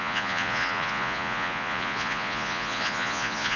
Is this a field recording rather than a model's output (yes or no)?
no